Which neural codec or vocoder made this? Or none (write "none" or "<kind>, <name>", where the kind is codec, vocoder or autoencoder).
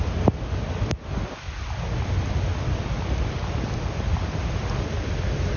none